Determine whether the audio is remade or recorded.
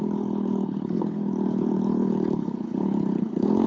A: remade